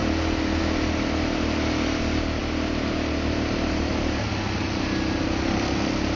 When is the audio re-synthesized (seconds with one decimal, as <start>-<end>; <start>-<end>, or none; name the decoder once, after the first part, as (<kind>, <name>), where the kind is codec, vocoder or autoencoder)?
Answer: none